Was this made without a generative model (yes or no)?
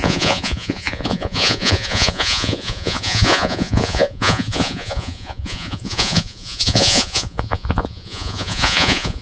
no